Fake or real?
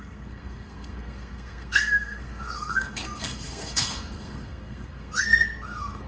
fake